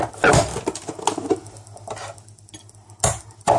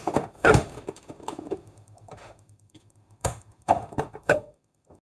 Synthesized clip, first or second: second